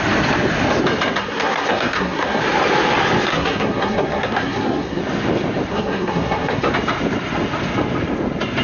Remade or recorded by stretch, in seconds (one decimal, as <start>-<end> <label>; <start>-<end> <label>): 0.0-1.2 recorded; 1.2-2.4 remade; 2.4-3.3 recorded; 3.3-5.0 remade; 5.0-5.7 recorded; 5.7-6.7 remade; 6.7-8.6 recorded